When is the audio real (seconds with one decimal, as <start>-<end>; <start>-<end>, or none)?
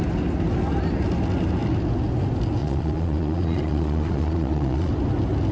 0.0-2.6; 4.9-5.5